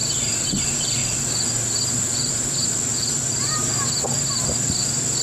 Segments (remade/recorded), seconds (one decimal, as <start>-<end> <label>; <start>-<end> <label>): 0.0-0.6 remade; 0.6-5.2 recorded